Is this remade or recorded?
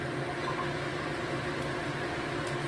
recorded